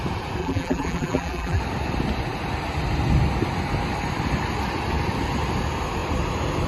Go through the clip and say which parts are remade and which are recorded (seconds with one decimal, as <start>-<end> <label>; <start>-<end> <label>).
0.0-0.4 recorded; 0.4-1.6 remade; 1.6-6.7 recorded